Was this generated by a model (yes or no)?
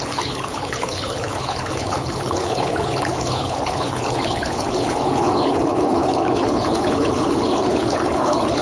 yes